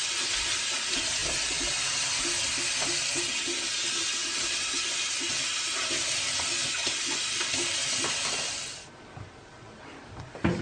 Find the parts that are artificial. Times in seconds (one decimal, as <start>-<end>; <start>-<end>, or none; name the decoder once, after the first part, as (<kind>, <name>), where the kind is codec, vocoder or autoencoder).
0.0-0.6 (vocoder, BigVGAN v2); 1.2-2.0; 6.6-10.2